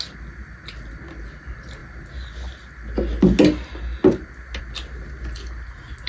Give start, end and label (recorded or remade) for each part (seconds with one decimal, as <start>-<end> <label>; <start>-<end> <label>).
0.0-6.1 recorded